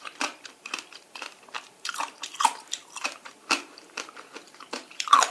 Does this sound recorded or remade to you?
remade